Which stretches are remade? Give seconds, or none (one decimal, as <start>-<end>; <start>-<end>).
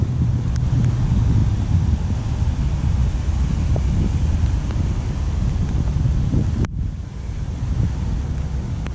none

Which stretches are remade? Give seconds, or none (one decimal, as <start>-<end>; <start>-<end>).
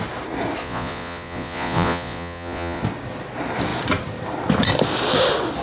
0.6-2.8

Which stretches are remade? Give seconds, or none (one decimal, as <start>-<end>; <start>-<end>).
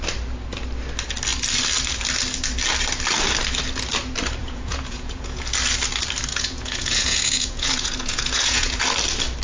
4.4-5.4; 6.3-8.8